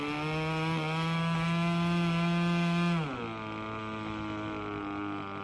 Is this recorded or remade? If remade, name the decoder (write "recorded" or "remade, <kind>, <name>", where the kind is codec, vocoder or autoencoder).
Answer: recorded